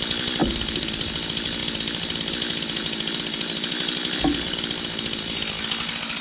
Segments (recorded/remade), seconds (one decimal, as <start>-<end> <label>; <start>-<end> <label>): 0.0-0.4 recorded; 0.4-1.1 remade; 1.1-2.8 recorded; 2.8-3.7 remade; 3.7-6.2 recorded